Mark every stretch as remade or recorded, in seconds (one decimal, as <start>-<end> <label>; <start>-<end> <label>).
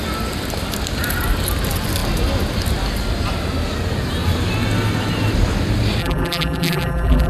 0.0-6.0 recorded; 6.0-7.3 remade